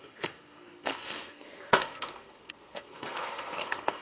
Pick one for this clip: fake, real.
fake